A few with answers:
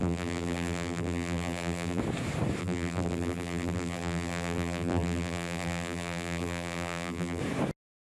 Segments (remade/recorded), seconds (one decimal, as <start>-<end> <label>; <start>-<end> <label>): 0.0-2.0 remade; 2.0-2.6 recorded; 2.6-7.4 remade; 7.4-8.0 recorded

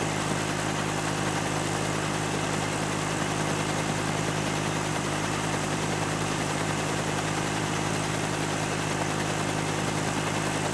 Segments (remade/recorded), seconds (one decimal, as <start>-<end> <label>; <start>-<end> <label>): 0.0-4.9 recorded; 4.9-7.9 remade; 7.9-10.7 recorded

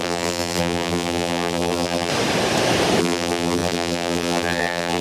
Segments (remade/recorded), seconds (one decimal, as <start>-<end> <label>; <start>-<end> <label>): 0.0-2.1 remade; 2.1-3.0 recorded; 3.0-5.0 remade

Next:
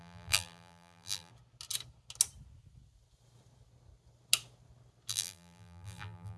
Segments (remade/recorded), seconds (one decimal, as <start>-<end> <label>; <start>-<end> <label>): 0.0-1.3 remade; 1.3-5.1 recorded; 5.1-6.4 remade

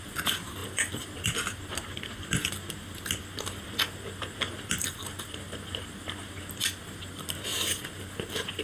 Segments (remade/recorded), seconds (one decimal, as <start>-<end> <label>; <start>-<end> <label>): 0.0-8.6 recorded